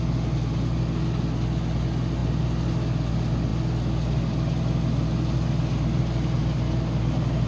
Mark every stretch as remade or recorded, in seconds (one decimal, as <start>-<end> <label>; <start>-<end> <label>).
0.0-7.5 recorded